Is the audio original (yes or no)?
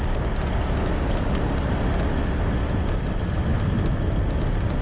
yes